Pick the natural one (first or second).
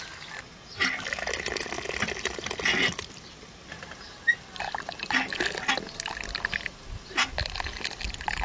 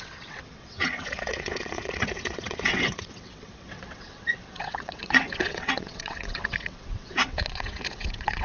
first